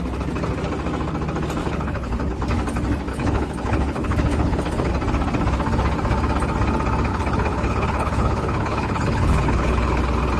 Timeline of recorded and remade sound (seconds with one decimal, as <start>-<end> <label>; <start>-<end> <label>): 0.0-1.6 recorded; 1.6-2.2 remade; 2.2-3.1 recorded; 3.1-4.9 remade; 4.9-7.1 recorded; 7.1-10.0 remade; 10.0-10.4 recorded